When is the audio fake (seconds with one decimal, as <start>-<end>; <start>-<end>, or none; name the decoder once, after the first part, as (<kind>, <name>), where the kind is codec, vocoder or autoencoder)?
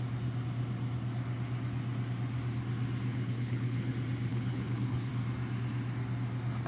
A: 3.1-3.9 (codec, HILCodec); 4.3-5.1